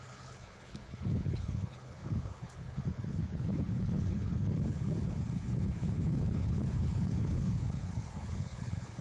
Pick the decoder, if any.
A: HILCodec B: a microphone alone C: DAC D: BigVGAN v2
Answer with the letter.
A